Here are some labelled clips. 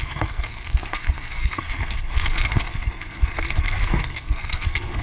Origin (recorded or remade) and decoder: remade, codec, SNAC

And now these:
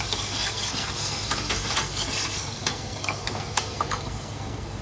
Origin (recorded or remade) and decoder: remade, codec, SNAC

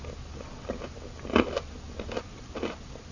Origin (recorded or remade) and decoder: recorded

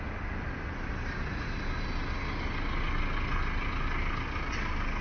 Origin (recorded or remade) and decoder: recorded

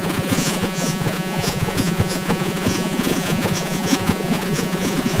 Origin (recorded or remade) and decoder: remade, vocoder, Vocos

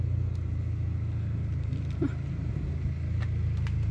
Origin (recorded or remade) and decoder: recorded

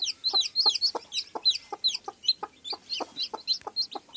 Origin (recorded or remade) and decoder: recorded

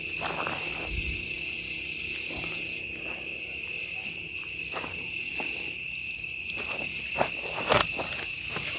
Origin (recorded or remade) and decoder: recorded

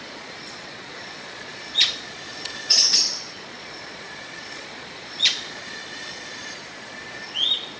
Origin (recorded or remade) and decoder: remade, vocoder, Vocos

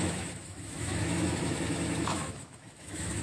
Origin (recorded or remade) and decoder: remade, autoencoder, DAC-VAE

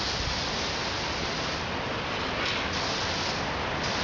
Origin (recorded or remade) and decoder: recorded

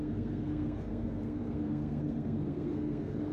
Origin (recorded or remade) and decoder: remade, codec, SNAC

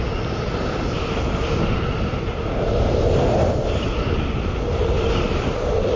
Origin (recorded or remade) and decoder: recorded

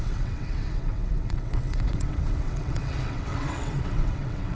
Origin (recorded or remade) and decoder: remade, vocoder, WaveNeXt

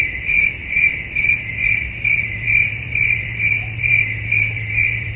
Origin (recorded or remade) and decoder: remade, vocoder, BigVGAN v2